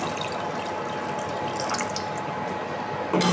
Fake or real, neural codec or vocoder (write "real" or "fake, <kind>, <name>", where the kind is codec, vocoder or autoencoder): real